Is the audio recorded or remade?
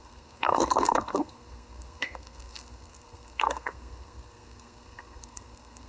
remade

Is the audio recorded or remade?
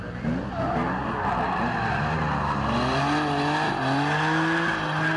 recorded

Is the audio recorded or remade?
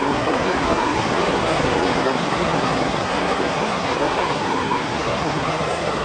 remade